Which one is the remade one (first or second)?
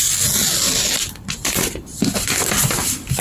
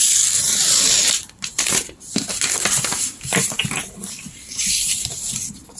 second